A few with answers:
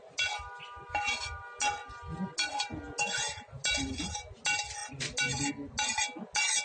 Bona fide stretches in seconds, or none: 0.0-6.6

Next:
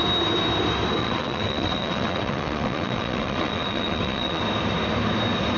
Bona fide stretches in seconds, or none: 0.0-1.0; 4.4-5.6

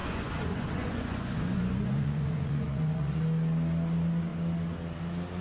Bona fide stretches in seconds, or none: 3.2-5.4

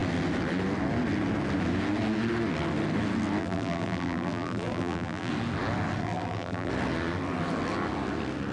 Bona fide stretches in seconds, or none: 0.0-3.4; 5.3-6.0; 6.7-8.5

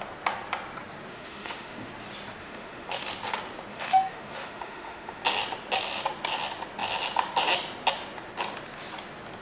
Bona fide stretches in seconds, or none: 0.0-1.1; 1.9-2.4; 3.1-3.7; 5.2-9.4

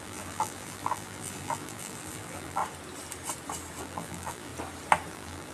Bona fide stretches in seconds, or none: 2.6-3.8; 4.5-5.1